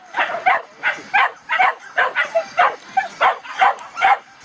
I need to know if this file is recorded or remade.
recorded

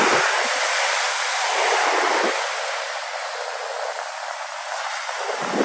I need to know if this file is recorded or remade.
recorded